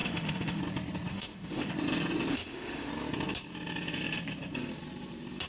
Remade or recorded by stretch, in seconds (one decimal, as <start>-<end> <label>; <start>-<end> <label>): 0.0-0.6 remade; 0.6-1.1 recorded; 1.1-1.7 remade; 1.7-2.3 recorded; 2.3-2.9 remade; 2.9-5.5 recorded

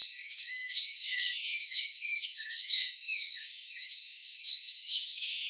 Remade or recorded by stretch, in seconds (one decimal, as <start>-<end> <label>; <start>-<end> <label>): 0.0-5.5 remade

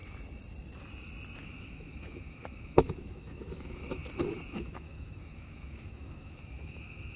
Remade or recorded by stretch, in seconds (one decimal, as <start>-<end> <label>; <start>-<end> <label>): 0.0-1.4 recorded; 1.4-4.0 remade; 4.0-4.5 recorded; 4.5-7.2 remade

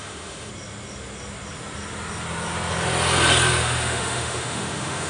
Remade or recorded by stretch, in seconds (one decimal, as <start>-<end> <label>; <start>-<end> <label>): 0.0-0.5 remade; 0.5-3.6 recorded; 3.6-5.1 remade

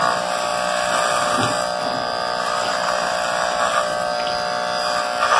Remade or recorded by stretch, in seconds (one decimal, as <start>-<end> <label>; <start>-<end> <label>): 0.0-5.4 recorded